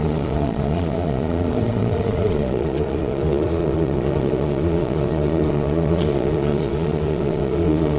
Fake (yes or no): yes